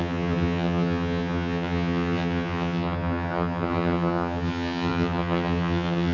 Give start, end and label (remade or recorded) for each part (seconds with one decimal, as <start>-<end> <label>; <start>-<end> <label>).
0.0-6.1 remade